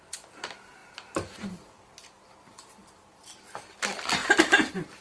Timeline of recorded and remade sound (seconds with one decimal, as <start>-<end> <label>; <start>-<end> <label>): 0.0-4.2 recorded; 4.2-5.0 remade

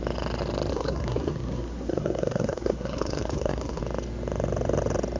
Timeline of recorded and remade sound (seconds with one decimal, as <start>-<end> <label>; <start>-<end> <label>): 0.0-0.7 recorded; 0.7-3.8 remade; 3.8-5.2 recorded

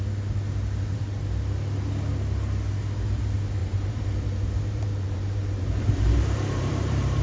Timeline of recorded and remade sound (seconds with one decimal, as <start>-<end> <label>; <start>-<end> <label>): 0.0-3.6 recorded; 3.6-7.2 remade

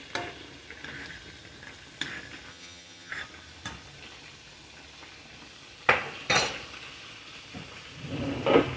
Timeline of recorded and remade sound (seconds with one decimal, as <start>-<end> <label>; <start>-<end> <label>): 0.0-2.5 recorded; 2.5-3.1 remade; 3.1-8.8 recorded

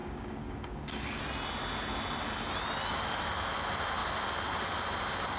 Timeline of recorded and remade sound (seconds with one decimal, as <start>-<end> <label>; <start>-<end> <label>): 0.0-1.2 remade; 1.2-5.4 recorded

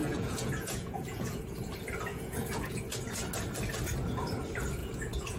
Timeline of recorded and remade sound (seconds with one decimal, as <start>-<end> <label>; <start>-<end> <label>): 0.0-1.4 remade; 1.4-2.1 recorded; 2.1-2.8 remade; 2.8-4.8 recorded; 4.8-5.4 remade